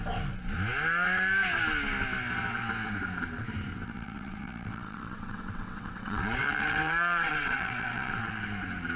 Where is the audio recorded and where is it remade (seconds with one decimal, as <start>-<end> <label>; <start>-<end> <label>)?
0.0-3.7 recorded; 3.7-8.4 remade; 8.4-9.0 recorded